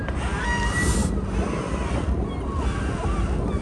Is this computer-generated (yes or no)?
no